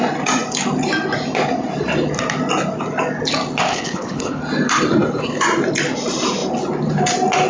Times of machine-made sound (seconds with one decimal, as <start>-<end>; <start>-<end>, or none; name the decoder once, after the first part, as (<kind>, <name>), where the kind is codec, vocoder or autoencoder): 3.7-4.4 (codec, HILCodec)